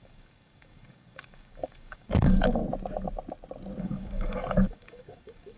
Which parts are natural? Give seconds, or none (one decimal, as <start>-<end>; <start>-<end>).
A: 2.6-3.8